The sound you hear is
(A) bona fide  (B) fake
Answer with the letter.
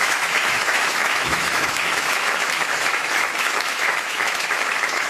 B